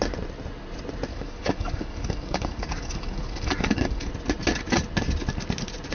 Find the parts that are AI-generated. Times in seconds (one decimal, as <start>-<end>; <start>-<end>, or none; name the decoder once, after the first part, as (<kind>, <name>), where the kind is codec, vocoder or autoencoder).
1.1-4.1 (codec, DAC)